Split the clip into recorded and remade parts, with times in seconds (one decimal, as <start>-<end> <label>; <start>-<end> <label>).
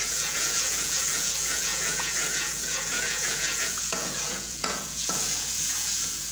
0.0-6.3 remade